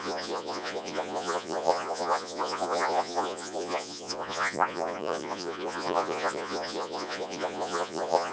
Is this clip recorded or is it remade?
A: remade